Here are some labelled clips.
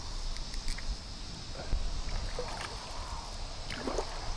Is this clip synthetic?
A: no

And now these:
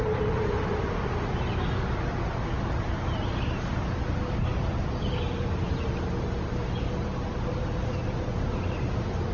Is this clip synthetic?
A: no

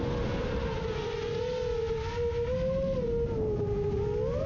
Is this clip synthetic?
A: no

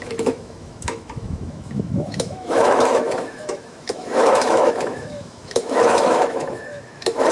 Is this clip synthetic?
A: yes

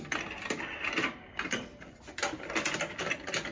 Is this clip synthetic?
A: no